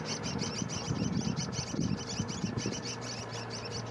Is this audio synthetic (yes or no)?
no